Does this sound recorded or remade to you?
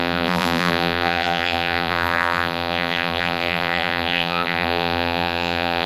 remade